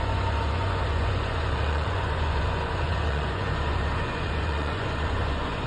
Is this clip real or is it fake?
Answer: fake